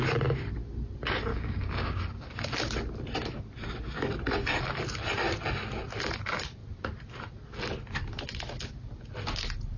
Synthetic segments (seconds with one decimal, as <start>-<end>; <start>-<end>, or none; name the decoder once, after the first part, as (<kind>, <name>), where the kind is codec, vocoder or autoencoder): 1.3-2.0 (codec, DAC)